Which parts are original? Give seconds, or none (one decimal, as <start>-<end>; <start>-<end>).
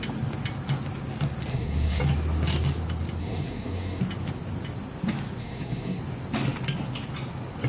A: 0.0-1.5; 2.0-3.2; 4.0-5.4; 6.0-7.7